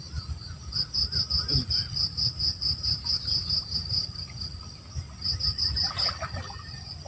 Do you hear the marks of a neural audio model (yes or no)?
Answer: no